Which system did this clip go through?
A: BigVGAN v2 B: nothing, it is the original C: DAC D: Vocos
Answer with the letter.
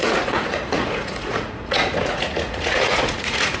D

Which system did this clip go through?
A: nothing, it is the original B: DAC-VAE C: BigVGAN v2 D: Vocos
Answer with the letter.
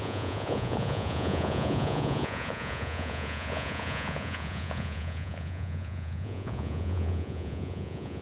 D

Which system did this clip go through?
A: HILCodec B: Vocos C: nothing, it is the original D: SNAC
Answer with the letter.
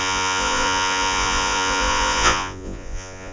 B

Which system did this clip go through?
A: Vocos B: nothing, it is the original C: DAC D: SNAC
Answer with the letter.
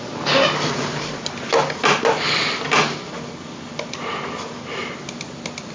B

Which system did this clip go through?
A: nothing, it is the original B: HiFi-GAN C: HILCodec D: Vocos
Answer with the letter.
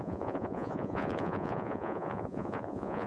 D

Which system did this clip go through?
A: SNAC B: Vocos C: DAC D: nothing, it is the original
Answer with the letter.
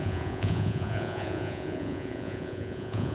B